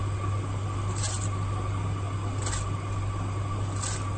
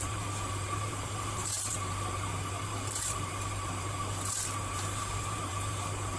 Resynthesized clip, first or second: second